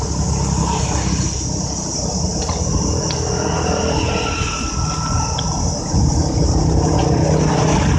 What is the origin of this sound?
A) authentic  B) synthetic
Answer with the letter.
A